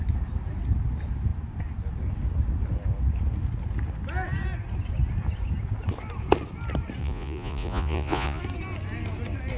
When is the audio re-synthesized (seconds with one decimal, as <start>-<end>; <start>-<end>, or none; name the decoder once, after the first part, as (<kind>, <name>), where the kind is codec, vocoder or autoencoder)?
7.0-8.4 (vocoder, Vocos)